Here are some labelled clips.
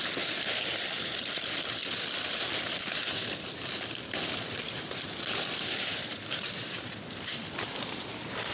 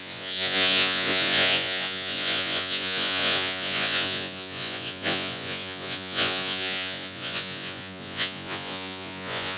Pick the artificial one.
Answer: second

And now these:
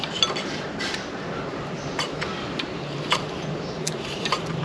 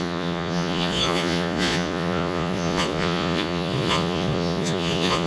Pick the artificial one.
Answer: second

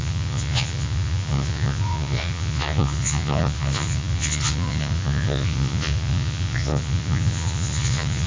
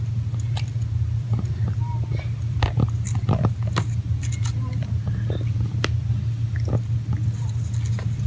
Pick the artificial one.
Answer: first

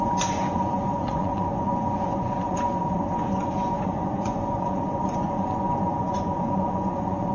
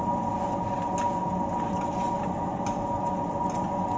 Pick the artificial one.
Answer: first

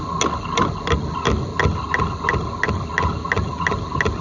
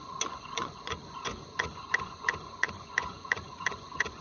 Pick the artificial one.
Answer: second